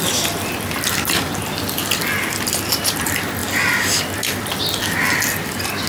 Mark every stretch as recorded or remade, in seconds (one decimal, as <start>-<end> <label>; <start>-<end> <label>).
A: 0.0-5.9 recorded

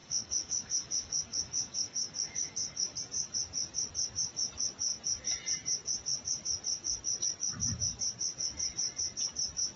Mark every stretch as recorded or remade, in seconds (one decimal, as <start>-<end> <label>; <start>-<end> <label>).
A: 0.0-3.0 remade; 3.0-9.8 recorded

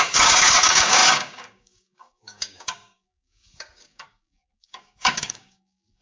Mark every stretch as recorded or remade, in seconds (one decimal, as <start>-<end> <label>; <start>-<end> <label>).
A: 0.0-6.0 remade

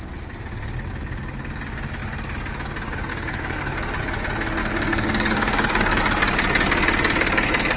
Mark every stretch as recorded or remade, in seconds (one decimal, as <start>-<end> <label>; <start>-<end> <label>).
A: 0.0-3.1 recorded; 3.1-4.0 remade; 4.0-4.6 recorded; 4.6-6.0 remade; 6.0-7.8 recorded

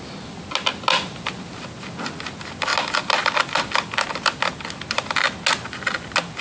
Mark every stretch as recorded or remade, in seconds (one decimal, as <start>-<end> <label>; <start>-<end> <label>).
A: 0.0-6.4 recorded

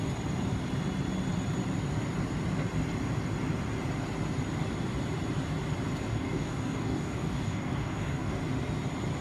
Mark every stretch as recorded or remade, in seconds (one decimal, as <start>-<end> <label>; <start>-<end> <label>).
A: 0.0-6.1 recorded; 6.1-8.3 remade; 8.3-9.2 recorded

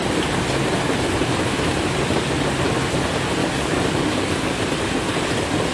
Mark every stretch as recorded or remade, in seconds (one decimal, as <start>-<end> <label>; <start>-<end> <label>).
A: 0.0-3.4 recorded; 3.4-4.6 remade; 4.6-5.7 recorded

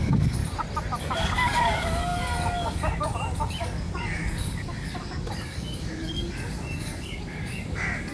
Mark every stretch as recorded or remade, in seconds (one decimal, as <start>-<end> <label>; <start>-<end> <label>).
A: 0.0-0.4 remade; 0.4-1.0 recorded; 1.0-8.1 remade